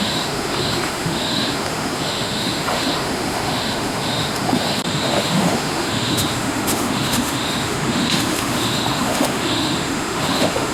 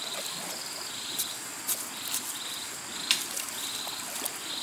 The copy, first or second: first